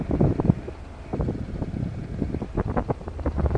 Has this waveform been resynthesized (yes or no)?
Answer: no